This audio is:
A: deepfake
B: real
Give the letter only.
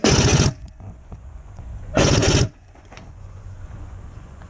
A